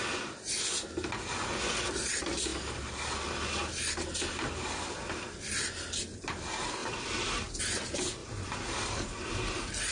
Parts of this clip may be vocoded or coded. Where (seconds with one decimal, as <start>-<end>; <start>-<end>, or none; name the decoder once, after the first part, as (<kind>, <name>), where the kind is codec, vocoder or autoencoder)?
8.2-9.3 (vocoder, BigVGAN v2)